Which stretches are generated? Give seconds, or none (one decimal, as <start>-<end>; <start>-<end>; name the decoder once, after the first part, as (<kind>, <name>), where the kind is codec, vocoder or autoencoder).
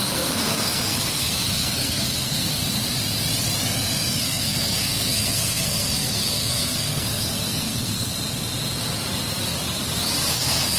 0.0-2.6 (codec, SNAC); 4.2-8.1; 10.3-10.8